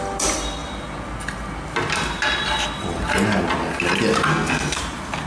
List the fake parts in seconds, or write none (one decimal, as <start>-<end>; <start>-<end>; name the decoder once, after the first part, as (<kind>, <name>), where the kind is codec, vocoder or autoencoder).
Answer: 4.3-4.8 (codec, SNAC)